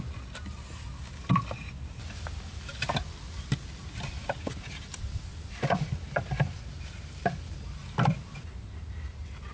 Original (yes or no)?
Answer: yes